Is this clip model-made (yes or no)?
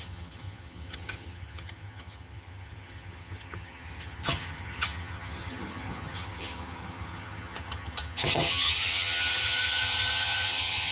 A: yes